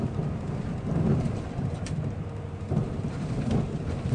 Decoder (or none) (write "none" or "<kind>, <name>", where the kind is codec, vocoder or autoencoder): vocoder, BigVGAN v2